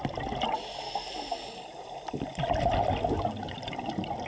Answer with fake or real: real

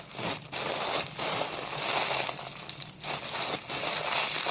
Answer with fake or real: real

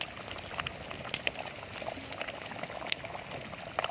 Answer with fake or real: real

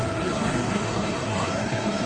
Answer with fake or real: fake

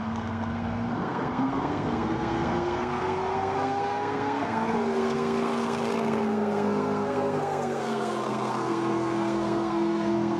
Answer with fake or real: fake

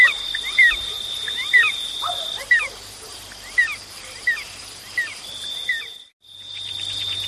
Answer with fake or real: fake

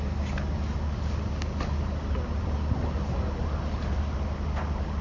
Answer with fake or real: real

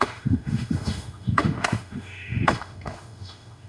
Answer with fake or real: fake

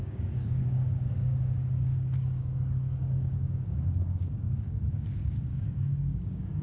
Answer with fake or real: fake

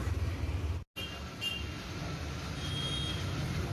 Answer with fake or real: real